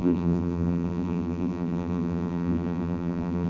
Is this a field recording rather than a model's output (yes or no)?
no